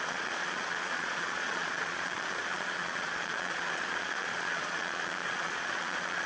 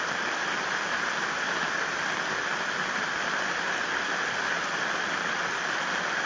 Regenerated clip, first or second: first